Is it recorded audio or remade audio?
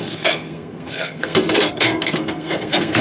remade